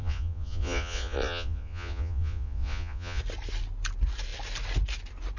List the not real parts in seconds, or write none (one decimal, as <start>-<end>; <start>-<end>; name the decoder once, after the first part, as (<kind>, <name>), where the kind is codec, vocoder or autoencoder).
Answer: 0.0-3.2 (vocoder, Vocos)